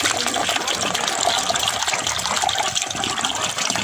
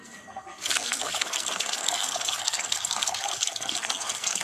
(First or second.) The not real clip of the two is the second